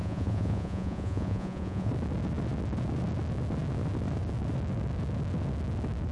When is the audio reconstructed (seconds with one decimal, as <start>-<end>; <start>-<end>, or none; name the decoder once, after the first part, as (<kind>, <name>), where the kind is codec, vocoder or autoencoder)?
0.0-1.9 (vocoder, Vocos)